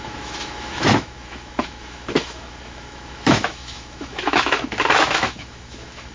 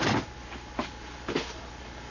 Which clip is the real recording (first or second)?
second